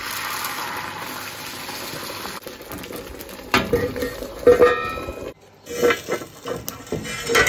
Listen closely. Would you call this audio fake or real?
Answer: real